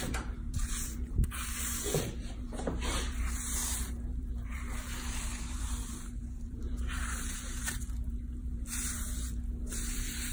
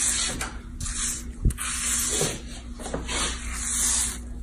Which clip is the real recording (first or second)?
second